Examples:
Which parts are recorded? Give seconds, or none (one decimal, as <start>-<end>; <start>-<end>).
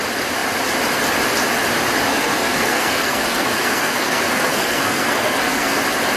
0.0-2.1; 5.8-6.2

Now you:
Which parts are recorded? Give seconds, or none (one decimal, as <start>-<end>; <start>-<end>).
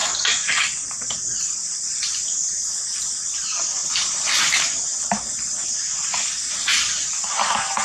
0.9-1.3; 2.0-3.8; 5.2-7.8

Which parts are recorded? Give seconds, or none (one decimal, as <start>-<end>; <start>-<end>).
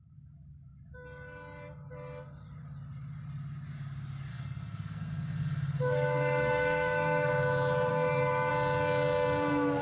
0.0-4.3; 7.3-7.9; 8.5-9.8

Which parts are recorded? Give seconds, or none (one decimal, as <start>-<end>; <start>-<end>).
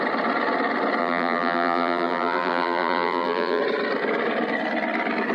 0.0-1.0; 3.6-5.3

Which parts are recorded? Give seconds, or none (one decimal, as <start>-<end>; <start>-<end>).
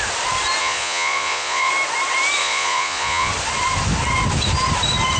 0.0-0.6; 1.7-2.4; 3.3-5.2